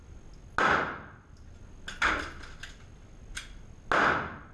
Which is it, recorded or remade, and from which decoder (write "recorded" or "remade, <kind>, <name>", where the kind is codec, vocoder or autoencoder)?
recorded